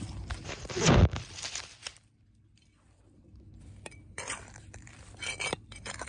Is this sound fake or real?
fake